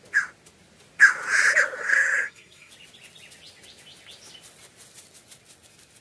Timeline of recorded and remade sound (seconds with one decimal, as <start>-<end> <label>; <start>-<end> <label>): 0.0-1.8 recorded; 1.8-2.7 remade; 2.7-6.0 recorded